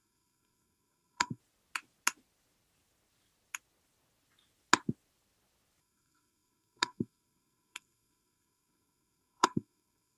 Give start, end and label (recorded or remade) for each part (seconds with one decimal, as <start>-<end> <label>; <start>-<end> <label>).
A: 0.0-1.4 remade; 1.4-5.8 recorded; 5.8-10.2 remade